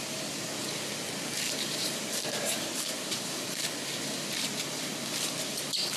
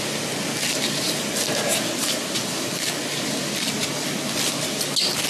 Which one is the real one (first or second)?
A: second